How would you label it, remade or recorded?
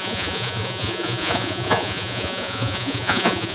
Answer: remade